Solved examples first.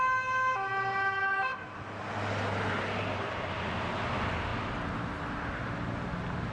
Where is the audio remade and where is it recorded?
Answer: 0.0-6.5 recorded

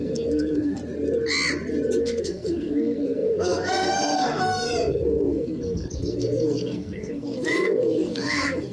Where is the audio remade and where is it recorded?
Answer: 0.0-0.8 remade; 0.8-2.0 recorded; 2.0-8.7 remade

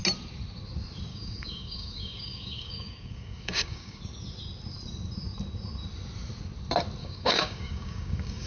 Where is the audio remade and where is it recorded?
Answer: 0.0-1.1 recorded; 1.1-4.0 remade; 4.0-7.0 recorded; 7.0-8.5 remade

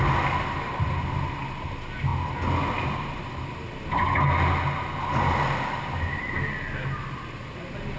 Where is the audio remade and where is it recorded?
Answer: 0.0-8.0 recorded

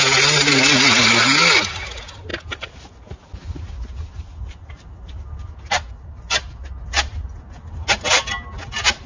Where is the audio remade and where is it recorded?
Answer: 0.0-9.1 recorded